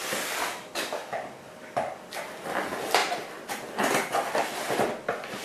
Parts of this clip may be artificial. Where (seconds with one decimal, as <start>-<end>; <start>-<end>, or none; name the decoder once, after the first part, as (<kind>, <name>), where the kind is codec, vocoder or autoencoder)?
0.4-2.1 (codec, DAC)

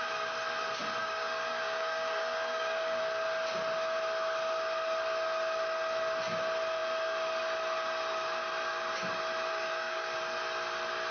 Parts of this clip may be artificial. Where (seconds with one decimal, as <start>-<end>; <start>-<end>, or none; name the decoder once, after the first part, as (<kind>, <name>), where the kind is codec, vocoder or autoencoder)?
1.0-3.0 (codec, DAC); 9.5-10.2